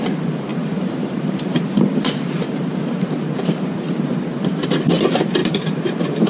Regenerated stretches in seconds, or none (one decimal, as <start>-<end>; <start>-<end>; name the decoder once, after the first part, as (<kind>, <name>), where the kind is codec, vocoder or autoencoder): 0.5-4.2 (vocoder, BigVGAN v2); 5.4-6.3